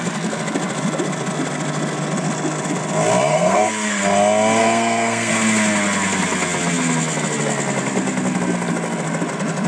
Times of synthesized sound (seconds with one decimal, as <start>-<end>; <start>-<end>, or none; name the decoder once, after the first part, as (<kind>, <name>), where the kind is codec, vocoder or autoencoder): 3.3-4.0 (codec, SNAC); 4.6-5.3

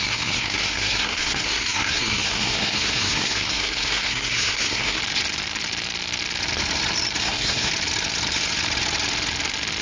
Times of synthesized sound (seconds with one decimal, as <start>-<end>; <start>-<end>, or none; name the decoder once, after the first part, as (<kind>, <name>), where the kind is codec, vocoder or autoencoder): 0.0-5.0 (codec, SNAC); 7.2-7.7

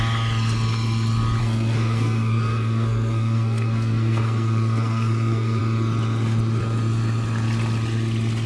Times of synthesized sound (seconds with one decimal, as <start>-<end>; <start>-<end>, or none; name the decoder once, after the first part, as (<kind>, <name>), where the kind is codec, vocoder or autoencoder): 1.4-5.6 (codec, SNAC)

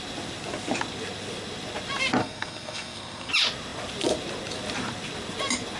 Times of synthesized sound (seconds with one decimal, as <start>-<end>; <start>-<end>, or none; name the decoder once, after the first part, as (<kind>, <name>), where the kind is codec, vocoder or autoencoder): 2.2-3.3 (codec, SNAC)

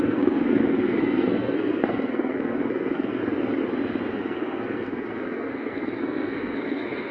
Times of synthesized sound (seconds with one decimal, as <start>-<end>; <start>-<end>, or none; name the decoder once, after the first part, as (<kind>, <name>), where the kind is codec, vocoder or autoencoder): 0.0-3.2 (codec, SNAC); 4.1-7.1

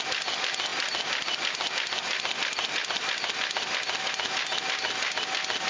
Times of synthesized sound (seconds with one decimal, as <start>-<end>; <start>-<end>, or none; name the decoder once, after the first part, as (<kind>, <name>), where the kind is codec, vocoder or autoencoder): none

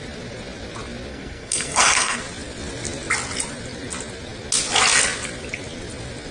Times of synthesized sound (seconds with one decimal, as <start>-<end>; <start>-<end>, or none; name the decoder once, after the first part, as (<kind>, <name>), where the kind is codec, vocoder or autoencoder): 1.1-2.2 (codec, SNAC)

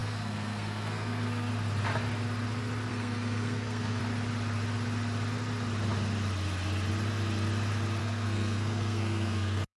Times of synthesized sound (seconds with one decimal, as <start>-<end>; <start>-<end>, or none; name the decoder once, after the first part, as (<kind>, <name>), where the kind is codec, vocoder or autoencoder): 0.0-1.5 (codec, SNAC); 2.9-4.0; 8.0-9.8